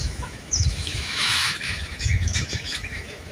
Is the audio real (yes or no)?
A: no